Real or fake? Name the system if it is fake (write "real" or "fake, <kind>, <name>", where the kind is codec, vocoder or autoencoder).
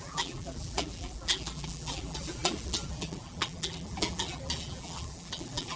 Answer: fake, vocoder, BigVGAN v2